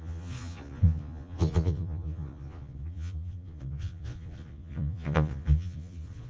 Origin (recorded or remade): remade